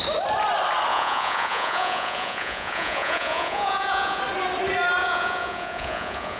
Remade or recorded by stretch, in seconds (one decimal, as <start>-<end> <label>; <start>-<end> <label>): 0.0-0.9 recorded; 0.9-4.2 remade; 4.2-5.0 recorded; 5.0-6.4 remade